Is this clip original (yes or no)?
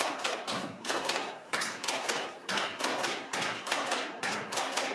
no